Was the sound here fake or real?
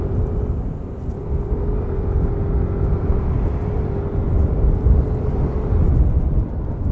real